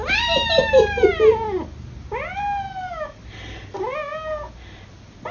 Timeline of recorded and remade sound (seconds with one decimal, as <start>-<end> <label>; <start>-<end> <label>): 0.0-5.3 recorded